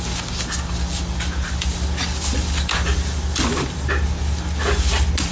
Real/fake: real